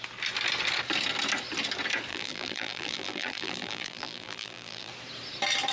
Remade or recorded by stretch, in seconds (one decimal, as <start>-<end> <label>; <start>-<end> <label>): 0.0-2.1 recorded; 2.1-4.9 remade; 4.9-5.7 recorded